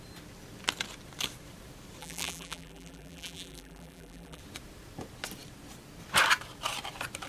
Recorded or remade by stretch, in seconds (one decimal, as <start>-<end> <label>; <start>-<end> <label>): 0.0-2.0 recorded; 2.0-4.4 remade; 4.4-7.3 recorded